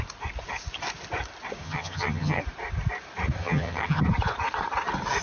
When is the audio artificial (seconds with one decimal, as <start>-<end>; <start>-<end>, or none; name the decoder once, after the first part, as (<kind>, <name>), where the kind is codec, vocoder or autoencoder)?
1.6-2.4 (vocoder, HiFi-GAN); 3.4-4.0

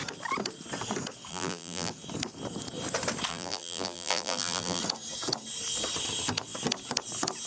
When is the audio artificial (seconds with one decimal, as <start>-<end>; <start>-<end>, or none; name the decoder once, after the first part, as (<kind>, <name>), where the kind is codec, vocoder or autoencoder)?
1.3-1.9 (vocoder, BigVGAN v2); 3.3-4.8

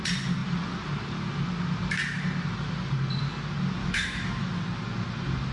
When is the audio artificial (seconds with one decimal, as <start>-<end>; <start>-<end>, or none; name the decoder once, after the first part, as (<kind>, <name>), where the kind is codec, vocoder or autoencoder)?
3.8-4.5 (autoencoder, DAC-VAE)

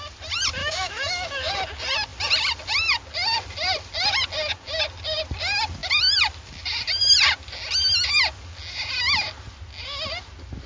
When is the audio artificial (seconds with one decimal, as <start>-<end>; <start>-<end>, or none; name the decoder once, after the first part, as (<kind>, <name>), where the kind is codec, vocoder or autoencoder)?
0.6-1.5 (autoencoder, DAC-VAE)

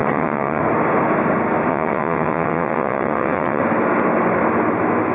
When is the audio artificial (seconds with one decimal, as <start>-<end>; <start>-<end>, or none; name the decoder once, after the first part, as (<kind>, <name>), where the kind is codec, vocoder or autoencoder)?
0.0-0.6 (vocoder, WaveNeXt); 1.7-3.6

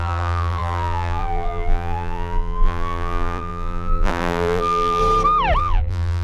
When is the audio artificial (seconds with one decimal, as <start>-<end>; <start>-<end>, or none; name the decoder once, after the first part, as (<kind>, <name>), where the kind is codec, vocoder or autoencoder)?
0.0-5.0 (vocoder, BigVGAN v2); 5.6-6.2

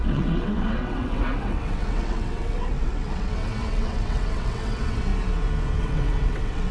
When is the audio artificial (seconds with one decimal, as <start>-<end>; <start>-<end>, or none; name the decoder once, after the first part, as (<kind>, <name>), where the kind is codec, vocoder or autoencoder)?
0.0-5.1 (vocoder, WaveNeXt); 5.8-6.7

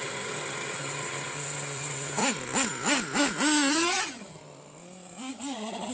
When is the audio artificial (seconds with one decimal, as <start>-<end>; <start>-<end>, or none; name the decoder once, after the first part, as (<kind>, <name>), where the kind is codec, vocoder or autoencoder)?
0.0-2.2 (vocoder, HiFi-GAN); 3.7-4.4; 5.3-5.9